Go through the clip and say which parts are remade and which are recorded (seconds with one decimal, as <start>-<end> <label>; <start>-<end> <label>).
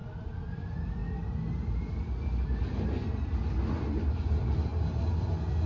0.0-5.7 recorded